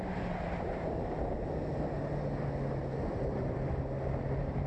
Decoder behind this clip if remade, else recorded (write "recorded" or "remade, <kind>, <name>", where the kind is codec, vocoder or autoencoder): recorded